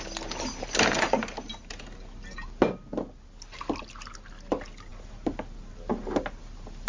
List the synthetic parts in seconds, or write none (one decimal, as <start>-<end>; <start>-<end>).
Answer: none